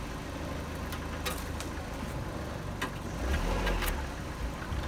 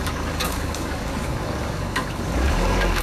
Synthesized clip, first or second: second